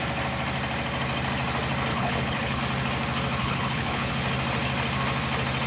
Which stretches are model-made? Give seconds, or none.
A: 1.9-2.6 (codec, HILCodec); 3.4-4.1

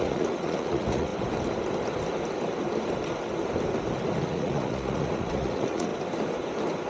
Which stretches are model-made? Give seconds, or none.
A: 0.0-1.1 (vocoder, Vocos); 4.2-5.9

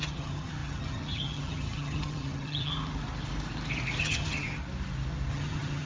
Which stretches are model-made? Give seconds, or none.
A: 0.0-2.7 (vocoder, HiFi-GAN); 4.0-4.6; 5.3-5.9